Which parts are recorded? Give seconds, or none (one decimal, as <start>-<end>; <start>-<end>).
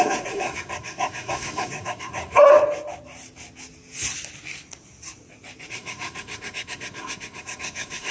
2.5-5.7